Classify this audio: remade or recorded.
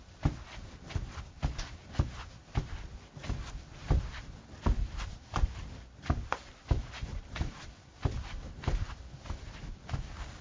recorded